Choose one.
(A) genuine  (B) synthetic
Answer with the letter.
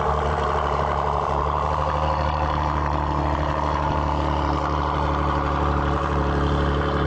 B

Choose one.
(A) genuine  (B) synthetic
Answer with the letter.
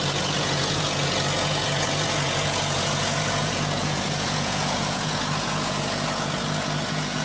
B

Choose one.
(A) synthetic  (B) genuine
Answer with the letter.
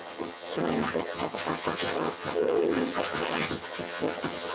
A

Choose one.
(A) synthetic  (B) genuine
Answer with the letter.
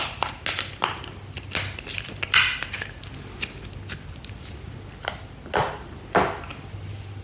B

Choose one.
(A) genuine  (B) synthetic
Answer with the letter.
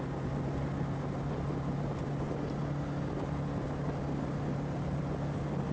A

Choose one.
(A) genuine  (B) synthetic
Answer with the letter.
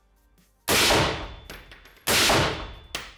A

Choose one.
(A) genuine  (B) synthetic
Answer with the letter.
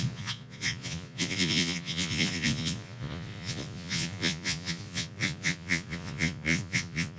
B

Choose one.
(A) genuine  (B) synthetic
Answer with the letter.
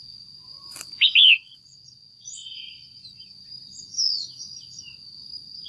B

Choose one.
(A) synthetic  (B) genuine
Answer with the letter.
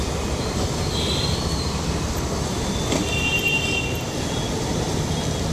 B